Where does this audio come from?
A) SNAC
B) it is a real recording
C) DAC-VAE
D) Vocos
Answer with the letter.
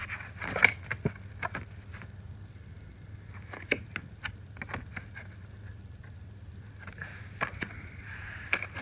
B